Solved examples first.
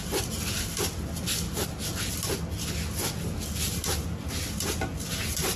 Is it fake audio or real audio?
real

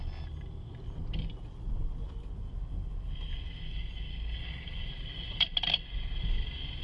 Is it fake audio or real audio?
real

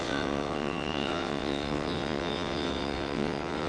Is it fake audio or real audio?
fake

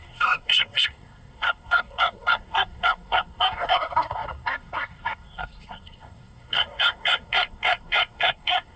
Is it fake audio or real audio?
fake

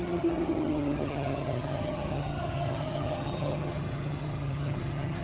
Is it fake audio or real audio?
fake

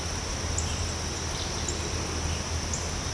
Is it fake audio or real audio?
real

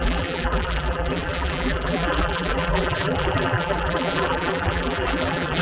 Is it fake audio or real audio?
fake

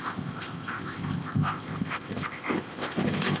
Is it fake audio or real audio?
fake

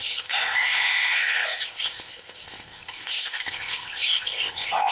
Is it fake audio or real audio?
fake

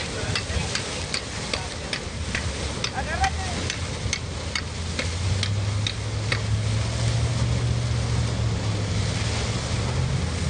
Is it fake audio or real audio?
real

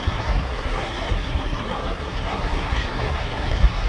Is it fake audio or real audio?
fake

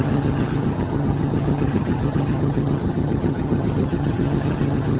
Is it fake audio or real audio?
fake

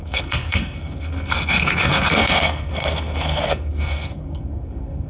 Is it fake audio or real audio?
fake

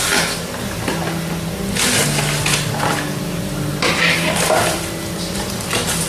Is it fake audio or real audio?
real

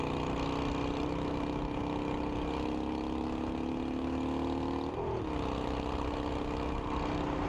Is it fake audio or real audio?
real